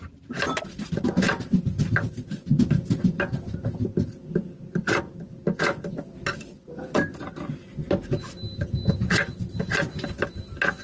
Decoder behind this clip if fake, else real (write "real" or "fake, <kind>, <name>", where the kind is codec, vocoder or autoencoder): real